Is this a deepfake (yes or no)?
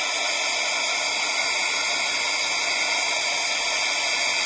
no